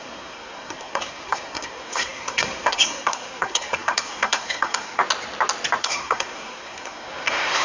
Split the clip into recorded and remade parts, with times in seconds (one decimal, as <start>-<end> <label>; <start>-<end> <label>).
0.0-5.0 remade; 5.0-5.8 recorded; 5.8-7.6 remade